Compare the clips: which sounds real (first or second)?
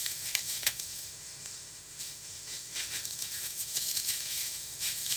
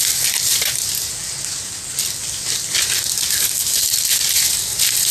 second